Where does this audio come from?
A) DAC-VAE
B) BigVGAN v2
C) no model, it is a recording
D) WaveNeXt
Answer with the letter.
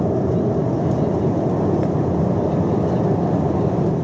C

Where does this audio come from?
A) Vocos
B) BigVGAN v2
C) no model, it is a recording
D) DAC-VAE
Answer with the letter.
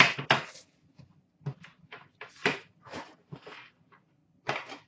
B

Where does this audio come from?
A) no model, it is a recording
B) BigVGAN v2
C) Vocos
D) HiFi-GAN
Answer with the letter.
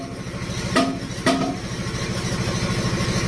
A